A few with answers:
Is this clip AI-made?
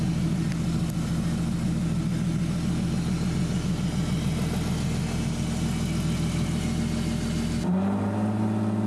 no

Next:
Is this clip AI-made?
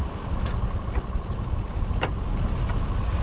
no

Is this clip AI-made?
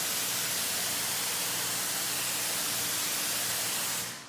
no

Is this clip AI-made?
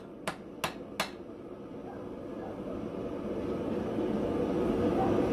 no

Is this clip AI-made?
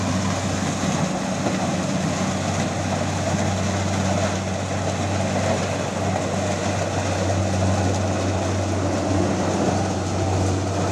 no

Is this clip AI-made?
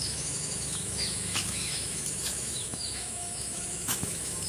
yes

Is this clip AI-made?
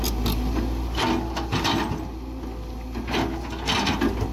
no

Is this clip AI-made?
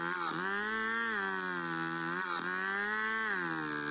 no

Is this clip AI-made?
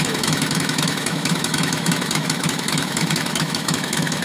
yes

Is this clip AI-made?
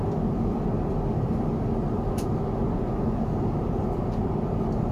no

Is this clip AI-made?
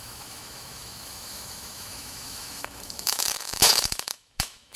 yes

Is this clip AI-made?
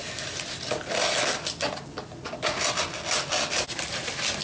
no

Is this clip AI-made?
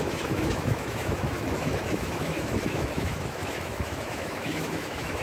yes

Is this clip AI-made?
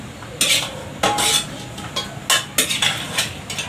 no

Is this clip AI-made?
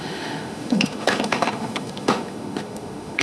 yes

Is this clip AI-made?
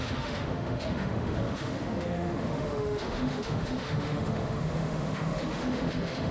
yes